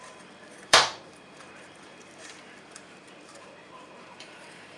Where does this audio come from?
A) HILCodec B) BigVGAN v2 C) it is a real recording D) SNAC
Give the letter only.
B